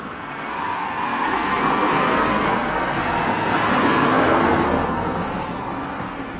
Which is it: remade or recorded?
remade